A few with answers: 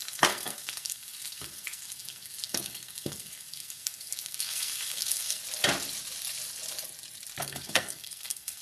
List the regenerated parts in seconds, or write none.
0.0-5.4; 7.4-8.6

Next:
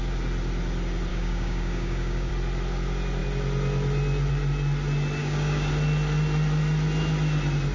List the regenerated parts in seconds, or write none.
1.1-2.3; 5.2-5.7

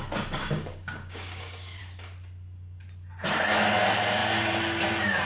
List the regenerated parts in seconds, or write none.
0.4-1.8

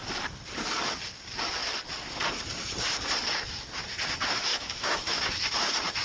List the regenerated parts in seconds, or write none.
4.5-5.4

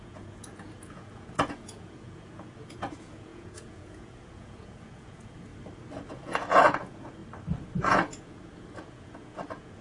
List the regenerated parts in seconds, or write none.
0.0-5.5; 6.1-7.2; 7.8-9.8

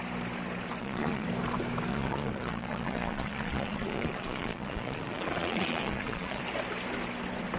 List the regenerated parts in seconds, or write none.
0.8-1.3; 1.9-6.4

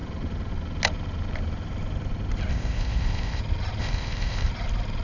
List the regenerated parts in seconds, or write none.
2.5-3.4; 3.8-4.5